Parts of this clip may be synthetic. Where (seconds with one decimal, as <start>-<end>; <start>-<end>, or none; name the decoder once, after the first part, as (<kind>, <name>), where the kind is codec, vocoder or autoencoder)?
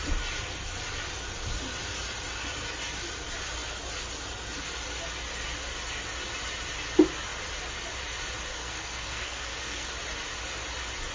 8.5-9.9 (codec, SNAC)